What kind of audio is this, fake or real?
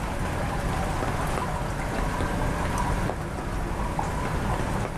real